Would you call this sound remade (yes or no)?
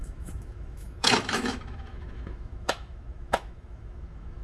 yes